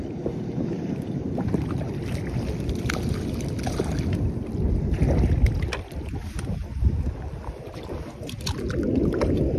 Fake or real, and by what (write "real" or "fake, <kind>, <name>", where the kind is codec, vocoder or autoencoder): real